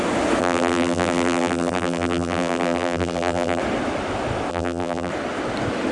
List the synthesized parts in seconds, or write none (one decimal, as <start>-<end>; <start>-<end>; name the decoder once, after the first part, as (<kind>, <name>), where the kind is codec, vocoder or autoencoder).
0.4-3.6 (vocoder, BigVGAN v2); 4.5-5.1